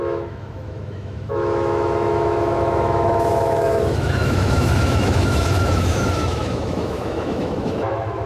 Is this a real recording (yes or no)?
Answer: no